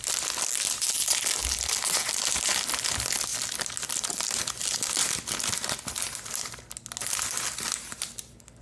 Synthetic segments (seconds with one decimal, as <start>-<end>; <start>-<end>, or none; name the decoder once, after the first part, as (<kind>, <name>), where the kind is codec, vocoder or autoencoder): none